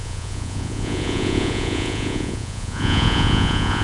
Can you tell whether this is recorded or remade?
remade